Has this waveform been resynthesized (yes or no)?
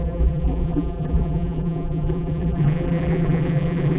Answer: yes